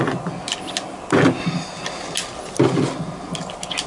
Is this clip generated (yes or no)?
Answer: no